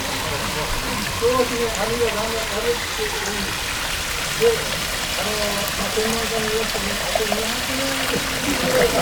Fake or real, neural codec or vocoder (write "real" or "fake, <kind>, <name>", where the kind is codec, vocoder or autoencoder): real